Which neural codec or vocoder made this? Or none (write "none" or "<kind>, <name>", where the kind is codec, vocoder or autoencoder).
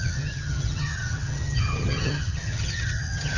vocoder, HiFi-GAN